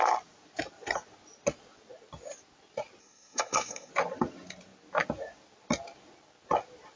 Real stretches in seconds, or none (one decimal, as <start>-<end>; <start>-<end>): 0.0-3.0; 3.9-7.0